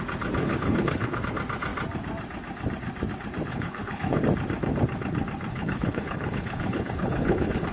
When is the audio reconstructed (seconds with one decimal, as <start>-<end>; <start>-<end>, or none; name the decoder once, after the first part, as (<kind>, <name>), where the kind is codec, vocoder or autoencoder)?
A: 0.4-1.2 (codec, HILCodec); 3.5-4.2; 5.5-7.7